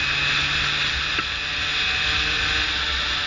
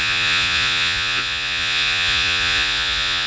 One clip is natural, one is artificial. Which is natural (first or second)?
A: first